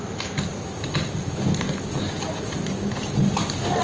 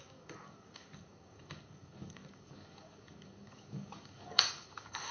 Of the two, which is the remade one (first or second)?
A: second